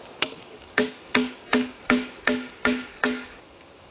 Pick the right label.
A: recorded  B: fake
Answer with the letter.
B